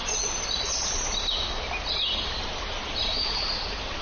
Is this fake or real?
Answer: real